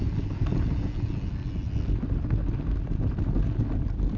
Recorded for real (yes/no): yes